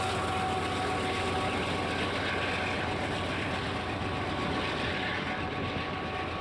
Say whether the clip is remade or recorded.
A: recorded